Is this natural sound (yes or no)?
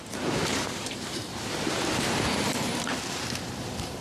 no